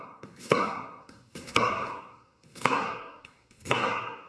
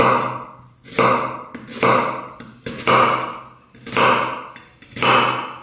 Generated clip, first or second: first